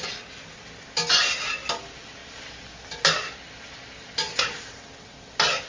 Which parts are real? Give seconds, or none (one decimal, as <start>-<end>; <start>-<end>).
0.0-5.7